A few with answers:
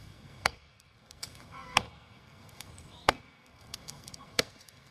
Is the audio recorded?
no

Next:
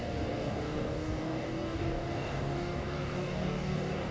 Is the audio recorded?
no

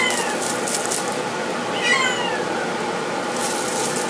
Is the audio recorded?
yes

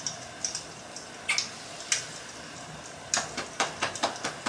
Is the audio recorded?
yes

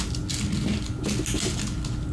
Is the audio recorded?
yes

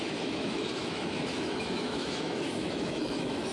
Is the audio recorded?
no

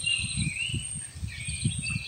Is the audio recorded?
yes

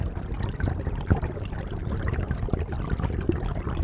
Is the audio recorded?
yes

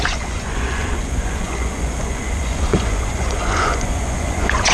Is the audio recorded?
no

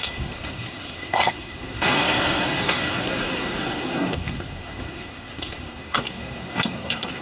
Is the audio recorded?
no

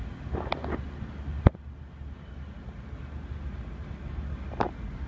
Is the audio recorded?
yes